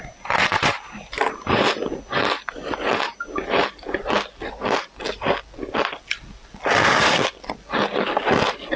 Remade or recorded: recorded